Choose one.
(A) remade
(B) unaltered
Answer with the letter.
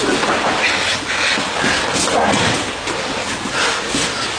B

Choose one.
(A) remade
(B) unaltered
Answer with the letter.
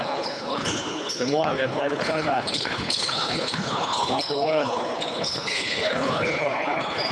A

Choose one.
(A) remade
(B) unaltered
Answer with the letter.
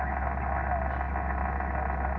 B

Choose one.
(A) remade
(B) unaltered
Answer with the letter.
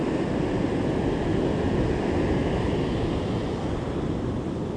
B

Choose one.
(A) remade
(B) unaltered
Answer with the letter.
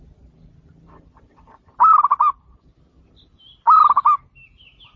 B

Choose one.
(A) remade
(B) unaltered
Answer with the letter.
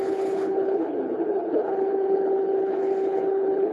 A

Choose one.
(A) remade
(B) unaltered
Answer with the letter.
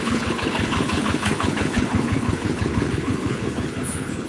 A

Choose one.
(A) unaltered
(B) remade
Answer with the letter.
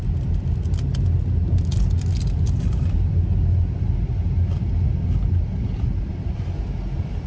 A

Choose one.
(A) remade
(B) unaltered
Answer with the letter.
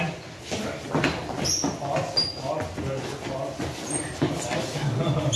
B